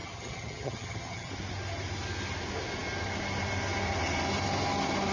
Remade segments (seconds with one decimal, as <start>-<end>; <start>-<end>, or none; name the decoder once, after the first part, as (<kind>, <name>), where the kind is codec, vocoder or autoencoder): 0.0-1.3 (vocoder, HiFi-GAN)

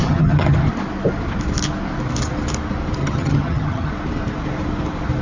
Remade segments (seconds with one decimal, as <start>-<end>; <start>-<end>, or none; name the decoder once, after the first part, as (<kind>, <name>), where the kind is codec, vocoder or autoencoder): 0.0-0.7 (vocoder, HiFi-GAN); 3.0-3.9

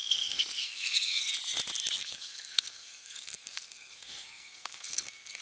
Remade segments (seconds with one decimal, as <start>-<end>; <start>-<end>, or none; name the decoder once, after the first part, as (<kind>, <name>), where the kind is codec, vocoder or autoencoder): 0.0-1.2 (codec, SNAC); 2.0-5.4

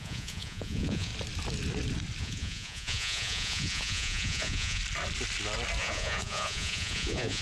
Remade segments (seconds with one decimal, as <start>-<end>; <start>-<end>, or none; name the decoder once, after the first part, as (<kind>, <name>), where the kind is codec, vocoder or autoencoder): 0.0-1.1 (vocoder, Vocos); 2.2-4.8; 5.8-7.4

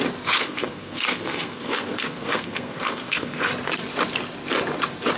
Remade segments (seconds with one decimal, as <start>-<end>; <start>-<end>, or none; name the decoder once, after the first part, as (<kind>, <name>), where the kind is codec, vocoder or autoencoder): 0.4-3.5 (codec, SNAC)

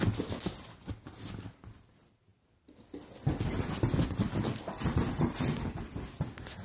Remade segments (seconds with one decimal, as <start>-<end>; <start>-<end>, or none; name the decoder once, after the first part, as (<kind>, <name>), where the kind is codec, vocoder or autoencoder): none

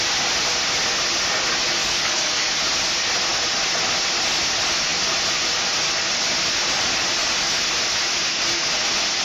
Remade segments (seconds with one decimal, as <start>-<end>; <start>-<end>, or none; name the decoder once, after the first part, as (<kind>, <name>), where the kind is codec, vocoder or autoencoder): 1.8-2.5 (codec, DAC)

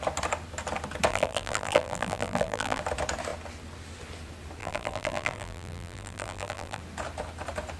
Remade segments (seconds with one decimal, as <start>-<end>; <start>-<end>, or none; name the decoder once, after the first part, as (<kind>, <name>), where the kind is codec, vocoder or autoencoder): 1.1-2.8 (vocoder, BigVGAN v2); 4.6-6.8